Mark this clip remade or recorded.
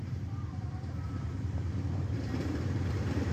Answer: remade